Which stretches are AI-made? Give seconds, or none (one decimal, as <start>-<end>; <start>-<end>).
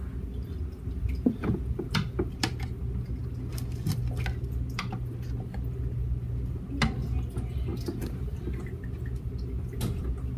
none